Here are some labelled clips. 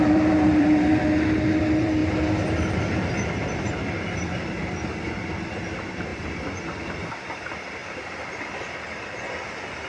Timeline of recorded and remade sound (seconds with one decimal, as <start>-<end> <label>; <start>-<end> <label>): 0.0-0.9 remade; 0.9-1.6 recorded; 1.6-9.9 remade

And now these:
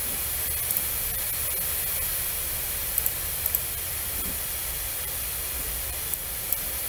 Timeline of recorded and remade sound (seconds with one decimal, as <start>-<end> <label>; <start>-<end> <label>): 0.0-2.8 recorded; 2.8-6.9 remade

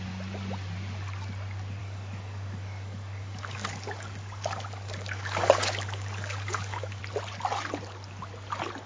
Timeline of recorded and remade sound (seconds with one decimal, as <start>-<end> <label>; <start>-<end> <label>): 0.0-1.8 recorded; 1.8-7.0 remade; 7.0-8.9 recorded

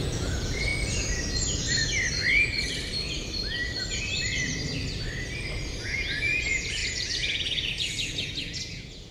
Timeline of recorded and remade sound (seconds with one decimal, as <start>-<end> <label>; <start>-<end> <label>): 0.0-0.7 remade; 0.7-5.8 recorded; 5.8-9.1 remade

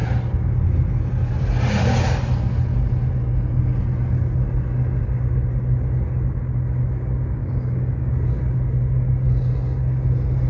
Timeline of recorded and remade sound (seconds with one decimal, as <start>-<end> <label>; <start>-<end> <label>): 0.0-7.4 recorded; 7.4-8.1 remade; 8.1-10.5 recorded

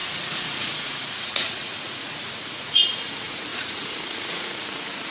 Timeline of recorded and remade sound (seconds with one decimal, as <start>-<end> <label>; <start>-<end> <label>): 0.0-5.1 remade